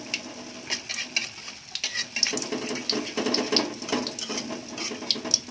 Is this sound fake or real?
real